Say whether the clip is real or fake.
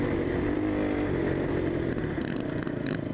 real